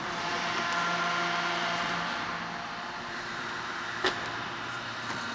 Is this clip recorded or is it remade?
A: remade